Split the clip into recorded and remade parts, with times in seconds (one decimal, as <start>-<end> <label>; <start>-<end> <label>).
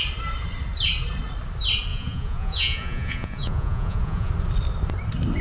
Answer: 0.0-1.9 recorded; 1.9-4.3 remade; 4.3-5.4 recorded